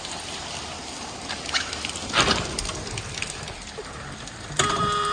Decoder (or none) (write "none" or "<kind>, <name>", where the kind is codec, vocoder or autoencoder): none